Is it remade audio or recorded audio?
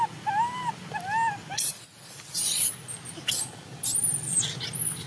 recorded